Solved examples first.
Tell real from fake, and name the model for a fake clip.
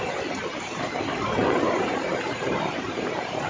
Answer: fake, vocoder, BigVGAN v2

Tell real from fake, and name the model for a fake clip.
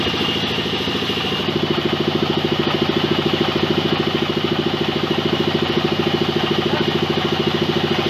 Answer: real